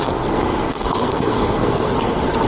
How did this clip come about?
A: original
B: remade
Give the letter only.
B